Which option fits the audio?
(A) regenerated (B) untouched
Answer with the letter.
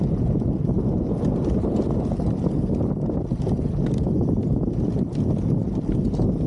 B